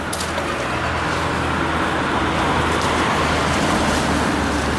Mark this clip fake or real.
real